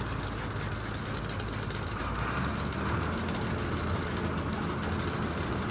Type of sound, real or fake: real